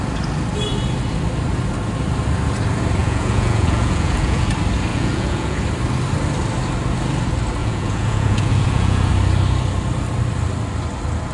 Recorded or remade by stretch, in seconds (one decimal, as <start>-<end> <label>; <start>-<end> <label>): 0.0-3.0 recorded; 3.0-4.5 remade; 4.5-4.9 recorded; 4.9-5.6 remade; 5.6-7.6 recorded; 7.6-9.1 remade; 9.1-11.3 recorded